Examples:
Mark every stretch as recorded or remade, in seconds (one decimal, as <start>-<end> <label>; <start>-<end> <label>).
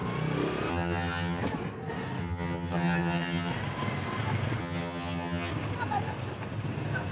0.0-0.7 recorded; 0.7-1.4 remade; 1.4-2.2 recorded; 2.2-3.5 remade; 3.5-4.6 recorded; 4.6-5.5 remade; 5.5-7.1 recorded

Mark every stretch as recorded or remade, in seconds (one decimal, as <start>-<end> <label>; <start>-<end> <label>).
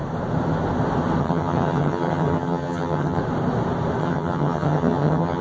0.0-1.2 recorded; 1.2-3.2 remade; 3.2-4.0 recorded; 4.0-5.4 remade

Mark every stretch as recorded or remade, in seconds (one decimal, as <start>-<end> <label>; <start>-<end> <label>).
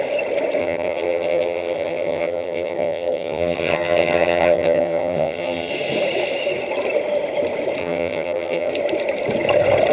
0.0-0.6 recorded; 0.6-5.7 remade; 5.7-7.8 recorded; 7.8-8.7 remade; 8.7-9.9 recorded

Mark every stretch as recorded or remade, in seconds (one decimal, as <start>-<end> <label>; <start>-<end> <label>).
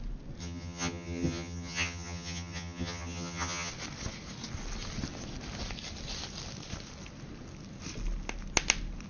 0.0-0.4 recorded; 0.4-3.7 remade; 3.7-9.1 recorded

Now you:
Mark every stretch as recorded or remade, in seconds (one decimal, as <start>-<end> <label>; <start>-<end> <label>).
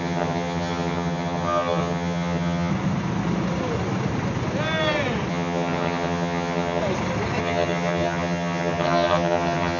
0.0-2.7 remade; 2.7-5.3 recorded; 5.3-6.8 remade; 6.8-7.4 recorded; 7.4-9.8 remade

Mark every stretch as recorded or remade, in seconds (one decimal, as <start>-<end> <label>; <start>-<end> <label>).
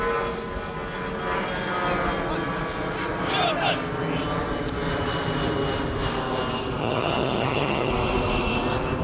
0.0-6.8 recorded; 6.8-7.9 remade; 7.9-9.0 recorded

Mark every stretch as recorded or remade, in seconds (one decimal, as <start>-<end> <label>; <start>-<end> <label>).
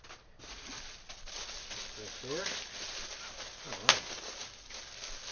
0.0-5.3 recorded